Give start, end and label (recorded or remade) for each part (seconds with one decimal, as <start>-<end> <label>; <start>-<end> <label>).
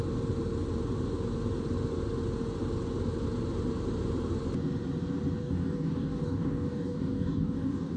0.0-5.4 recorded; 5.4-8.0 remade